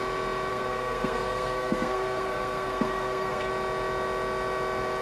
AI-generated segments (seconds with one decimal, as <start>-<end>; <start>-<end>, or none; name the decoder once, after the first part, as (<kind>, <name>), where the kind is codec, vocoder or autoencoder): 0.5-3.5 (codec, SNAC)